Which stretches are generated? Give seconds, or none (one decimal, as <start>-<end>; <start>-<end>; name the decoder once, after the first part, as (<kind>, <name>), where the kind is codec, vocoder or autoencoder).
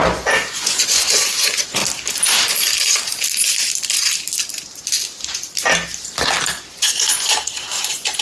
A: 0.0-1.8 (vocoder, Vocos); 6.7-8.2